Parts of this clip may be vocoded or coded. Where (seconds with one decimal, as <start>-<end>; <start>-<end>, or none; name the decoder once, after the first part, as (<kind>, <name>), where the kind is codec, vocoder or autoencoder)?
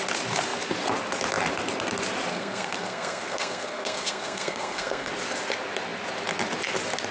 2.3-5.1 (codec, SNAC)